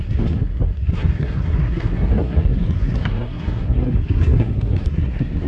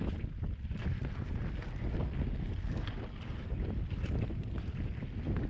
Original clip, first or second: second